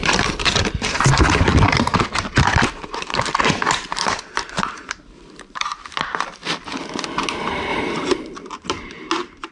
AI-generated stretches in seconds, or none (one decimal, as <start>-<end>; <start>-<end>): 3.9-5.9; 7.7-9.1